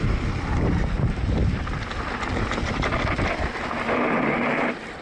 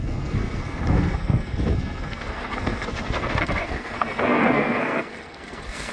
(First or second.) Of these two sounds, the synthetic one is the second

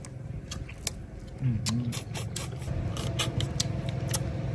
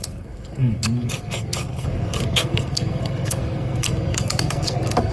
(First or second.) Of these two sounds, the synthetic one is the second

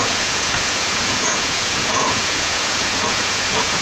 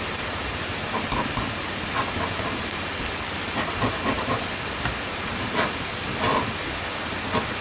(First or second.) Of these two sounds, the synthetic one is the first